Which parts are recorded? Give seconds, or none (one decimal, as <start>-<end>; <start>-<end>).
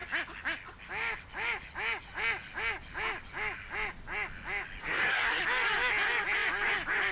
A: 0.0-4.8; 5.4-7.1